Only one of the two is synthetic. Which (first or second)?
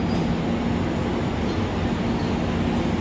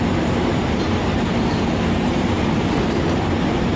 second